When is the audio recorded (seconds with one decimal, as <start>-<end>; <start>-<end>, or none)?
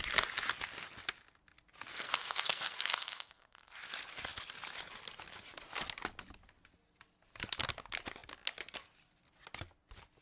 0.0-1.9; 3.7-10.2